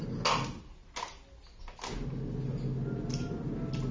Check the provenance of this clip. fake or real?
real